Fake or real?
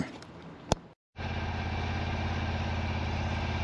real